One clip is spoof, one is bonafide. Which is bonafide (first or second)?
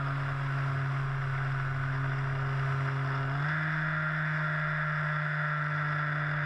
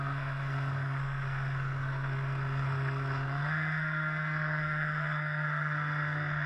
first